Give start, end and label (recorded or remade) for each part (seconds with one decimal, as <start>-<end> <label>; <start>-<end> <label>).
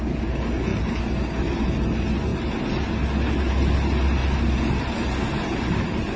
0.0-6.2 recorded